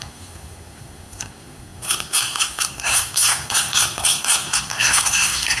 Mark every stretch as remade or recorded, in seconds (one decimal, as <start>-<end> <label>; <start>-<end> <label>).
0.0-5.6 remade